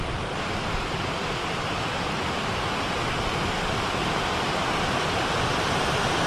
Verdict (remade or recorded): recorded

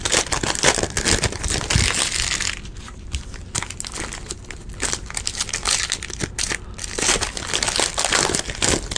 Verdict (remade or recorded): recorded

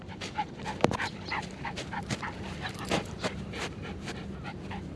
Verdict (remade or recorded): remade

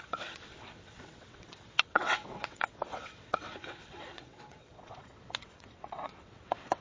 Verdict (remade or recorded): remade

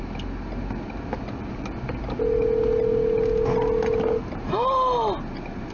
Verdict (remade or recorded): recorded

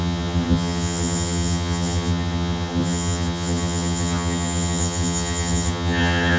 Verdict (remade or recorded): remade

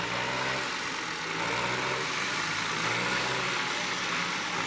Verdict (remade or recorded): recorded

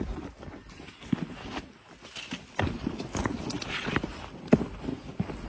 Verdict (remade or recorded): recorded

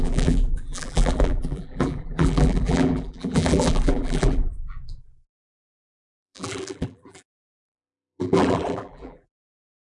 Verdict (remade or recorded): remade